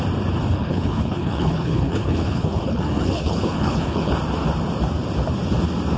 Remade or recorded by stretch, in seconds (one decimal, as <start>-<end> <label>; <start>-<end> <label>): 0.0-0.5 recorded; 0.5-4.1 remade; 4.1-6.0 recorded